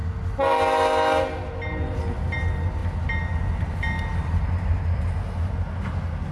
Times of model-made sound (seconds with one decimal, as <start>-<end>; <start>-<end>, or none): none